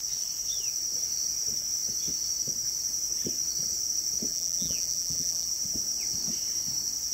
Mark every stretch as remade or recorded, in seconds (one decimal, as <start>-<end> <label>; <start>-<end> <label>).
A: 0.0-4.3 recorded; 4.3-5.5 remade; 5.5-7.1 recorded